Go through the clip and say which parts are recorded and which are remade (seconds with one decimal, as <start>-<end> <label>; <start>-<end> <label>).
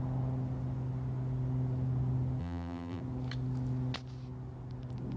0.0-2.4 recorded; 2.4-3.0 remade; 3.0-5.2 recorded